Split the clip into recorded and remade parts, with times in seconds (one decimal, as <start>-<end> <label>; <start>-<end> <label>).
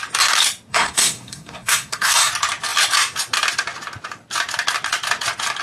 0.0-0.7 recorded; 0.7-2.3 remade; 2.3-5.6 recorded